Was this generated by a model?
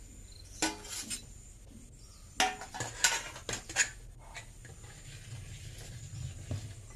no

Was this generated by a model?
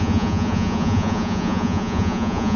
yes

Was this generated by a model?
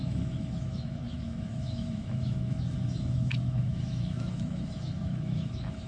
yes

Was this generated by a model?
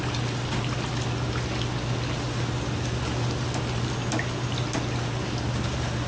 no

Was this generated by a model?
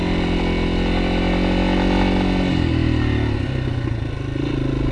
no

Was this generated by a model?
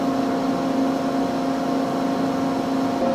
no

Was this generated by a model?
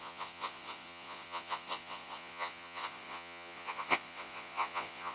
yes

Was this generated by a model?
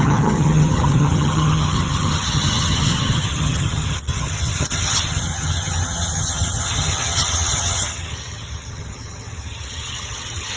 yes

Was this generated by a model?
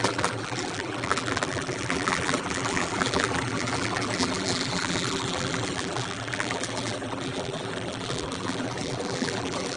yes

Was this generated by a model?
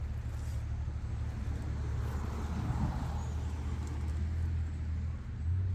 no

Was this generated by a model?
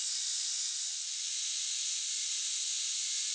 no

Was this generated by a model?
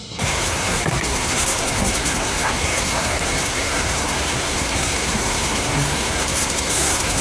yes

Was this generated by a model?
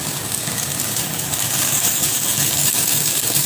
yes